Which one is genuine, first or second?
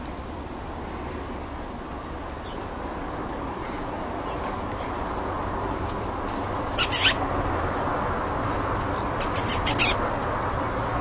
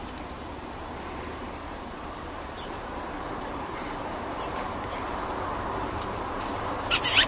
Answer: first